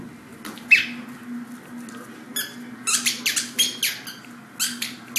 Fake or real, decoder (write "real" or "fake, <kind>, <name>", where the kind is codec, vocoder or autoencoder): real